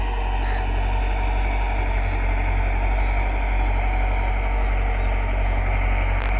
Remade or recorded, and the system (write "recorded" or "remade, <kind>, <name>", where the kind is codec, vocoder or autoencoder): recorded